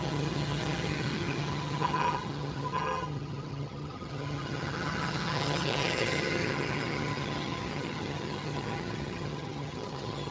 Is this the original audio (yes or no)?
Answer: no